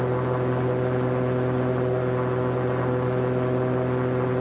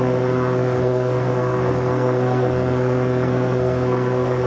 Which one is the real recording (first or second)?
first